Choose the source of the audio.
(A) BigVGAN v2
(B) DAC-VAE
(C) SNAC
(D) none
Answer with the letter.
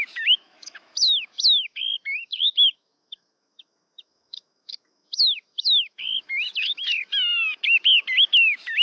B